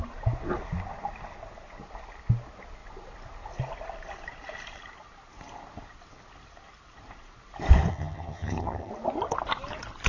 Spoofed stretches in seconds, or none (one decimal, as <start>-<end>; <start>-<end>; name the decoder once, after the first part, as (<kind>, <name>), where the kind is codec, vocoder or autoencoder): 7.9-8.9 (vocoder, HiFi-GAN)